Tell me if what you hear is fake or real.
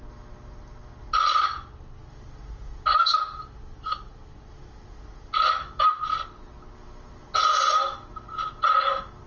real